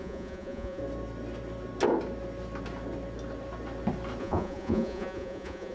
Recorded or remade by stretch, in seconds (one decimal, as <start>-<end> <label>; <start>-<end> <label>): 0.0-0.8 remade; 0.8-4.2 recorded; 4.2-5.7 remade